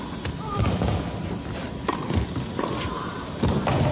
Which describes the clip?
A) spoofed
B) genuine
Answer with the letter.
B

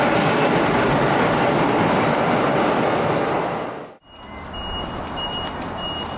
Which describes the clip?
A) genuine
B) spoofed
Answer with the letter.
A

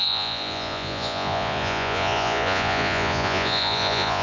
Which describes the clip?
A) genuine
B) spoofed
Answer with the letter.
B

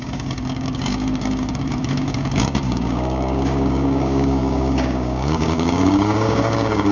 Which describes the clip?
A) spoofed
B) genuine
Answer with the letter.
A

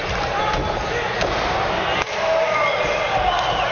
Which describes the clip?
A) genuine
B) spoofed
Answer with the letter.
A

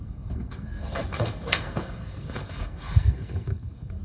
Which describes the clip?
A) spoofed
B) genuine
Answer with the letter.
A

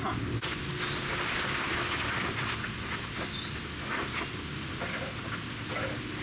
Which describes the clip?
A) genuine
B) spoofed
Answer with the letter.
A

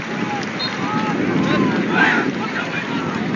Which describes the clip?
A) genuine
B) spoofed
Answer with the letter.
A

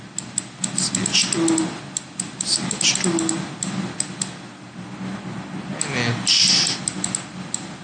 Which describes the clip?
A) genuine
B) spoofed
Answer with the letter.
A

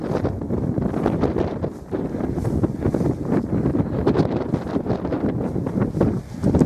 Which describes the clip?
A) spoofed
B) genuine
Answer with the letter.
B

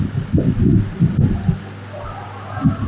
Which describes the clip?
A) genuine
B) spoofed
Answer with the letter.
A